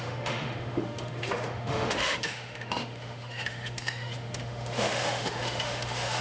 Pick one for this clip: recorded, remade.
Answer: remade